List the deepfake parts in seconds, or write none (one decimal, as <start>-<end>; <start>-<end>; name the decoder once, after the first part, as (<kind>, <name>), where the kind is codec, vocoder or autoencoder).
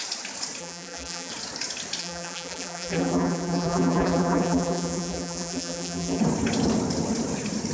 0.6-1.3 (vocoder, BigVGAN v2); 2.0-6.2